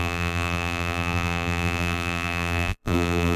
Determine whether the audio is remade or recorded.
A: remade